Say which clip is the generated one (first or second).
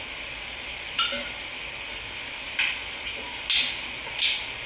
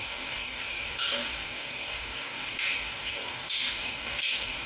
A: second